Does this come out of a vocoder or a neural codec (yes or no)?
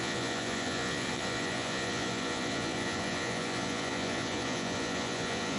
yes